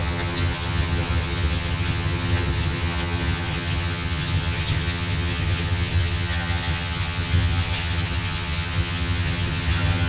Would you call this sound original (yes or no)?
no